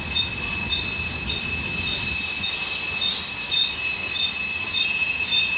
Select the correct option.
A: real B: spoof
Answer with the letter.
A